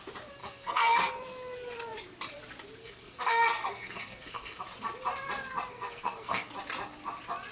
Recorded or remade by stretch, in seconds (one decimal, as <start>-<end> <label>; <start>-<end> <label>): 0.0-0.4 recorded; 0.4-1.1 remade; 1.1-2.8 recorded; 2.8-4.6 remade; 4.6-5.7 recorded; 5.7-6.5 remade; 6.5-7.5 recorded